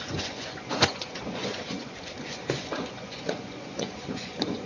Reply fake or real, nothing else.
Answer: fake